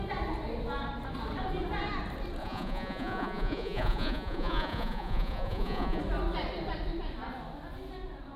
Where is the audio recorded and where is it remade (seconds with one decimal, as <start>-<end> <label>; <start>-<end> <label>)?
0.0-2.4 recorded; 2.4-6.0 remade; 6.0-8.4 recorded

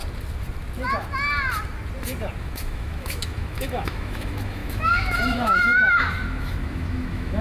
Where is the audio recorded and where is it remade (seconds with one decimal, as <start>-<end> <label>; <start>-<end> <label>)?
0.0-2.4 recorded; 2.4-7.4 remade